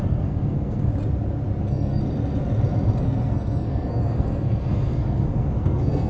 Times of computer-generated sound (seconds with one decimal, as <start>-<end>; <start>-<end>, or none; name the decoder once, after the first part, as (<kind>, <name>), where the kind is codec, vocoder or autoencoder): 0.0-0.9 (codec, SNAC); 1.6-2.0; 3.0-6.1